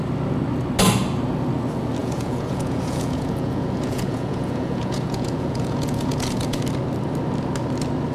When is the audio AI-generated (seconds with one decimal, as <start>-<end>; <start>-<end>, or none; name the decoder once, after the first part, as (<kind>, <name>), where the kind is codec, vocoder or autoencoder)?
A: 2.0-6.6 (vocoder, Vocos)